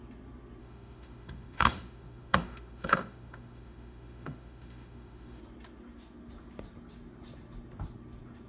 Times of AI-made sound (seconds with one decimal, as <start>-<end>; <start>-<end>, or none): 0.6-5.4

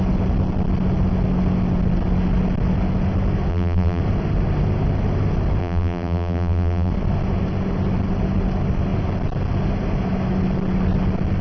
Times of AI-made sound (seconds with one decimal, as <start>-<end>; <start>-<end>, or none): 3.5-4.0; 5.6-6.9

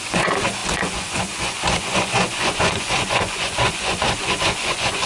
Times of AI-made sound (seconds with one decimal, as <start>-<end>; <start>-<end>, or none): 0.0-5.1

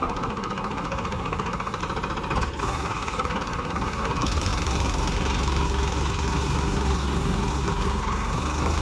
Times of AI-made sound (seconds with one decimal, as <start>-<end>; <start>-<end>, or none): 0.0-1.8; 2.6-8.8